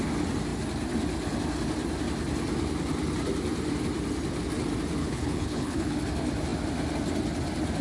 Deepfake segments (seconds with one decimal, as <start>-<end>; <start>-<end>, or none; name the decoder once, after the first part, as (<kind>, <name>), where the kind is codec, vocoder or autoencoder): 5.0-6.0 (codec, HILCodec)